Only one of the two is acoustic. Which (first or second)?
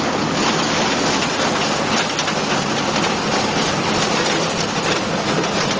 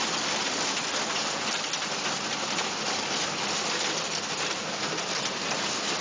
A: first